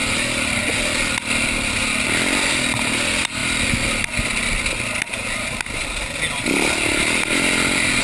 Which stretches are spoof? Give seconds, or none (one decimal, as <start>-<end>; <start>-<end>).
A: none